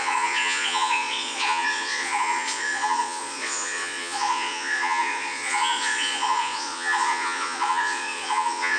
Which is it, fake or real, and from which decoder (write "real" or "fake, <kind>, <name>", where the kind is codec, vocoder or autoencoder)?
fake, vocoder, Vocos